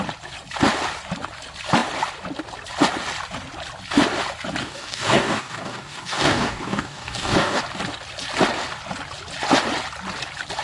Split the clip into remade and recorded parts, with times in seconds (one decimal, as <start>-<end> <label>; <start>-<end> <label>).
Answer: 0.0-4.6 recorded; 4.6-7.6 remade; 7.6-10.6 recorded